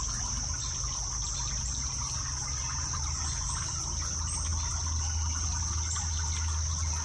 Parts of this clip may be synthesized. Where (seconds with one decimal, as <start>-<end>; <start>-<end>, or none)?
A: none